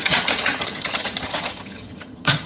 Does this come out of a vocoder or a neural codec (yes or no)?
yes